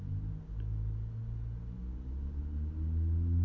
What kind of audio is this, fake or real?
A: real